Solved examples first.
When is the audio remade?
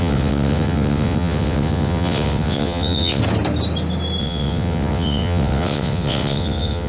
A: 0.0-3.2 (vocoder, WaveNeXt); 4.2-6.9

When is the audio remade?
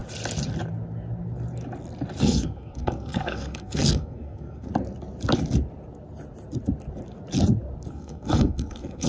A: 2.2-4.7 (codec, SNAC); 7.9-9.1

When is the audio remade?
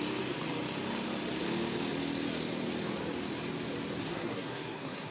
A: 4.0-5.1 (codec, SNAC)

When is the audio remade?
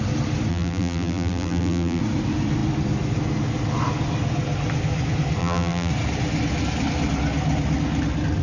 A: 0.5-2.0 (vocoder, BigVGAN v2); 5.4-5.9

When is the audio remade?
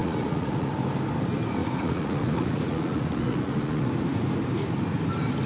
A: 0.0-0.7 (vocoder, Vocos); 1.6-3.9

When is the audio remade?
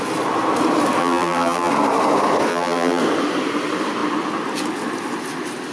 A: 1.0-1.7 (vocoder, BigVGAN v2); 2.5-3.0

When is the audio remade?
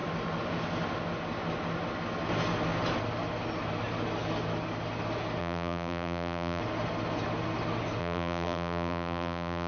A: 5.4-6.6 (vocoder, BigVGAN v2); 8.0-9.7